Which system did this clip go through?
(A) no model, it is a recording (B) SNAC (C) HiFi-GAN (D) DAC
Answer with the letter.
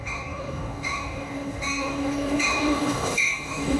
D